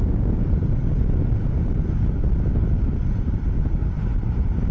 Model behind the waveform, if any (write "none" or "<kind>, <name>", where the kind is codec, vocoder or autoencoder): none